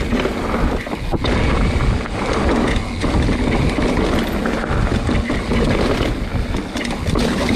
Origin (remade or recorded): recorded